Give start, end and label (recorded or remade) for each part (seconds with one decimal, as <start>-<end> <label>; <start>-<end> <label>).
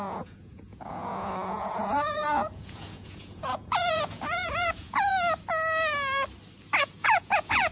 0.0-5.1 remade; 5.1-6.8 recorded; 6.8-7.7 remade